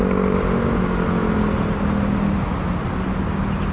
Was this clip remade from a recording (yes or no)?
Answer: no